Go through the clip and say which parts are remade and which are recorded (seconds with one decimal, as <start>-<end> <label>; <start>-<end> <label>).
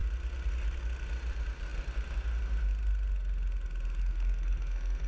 0.0-4.0 recorded; 4.0-5.1 remade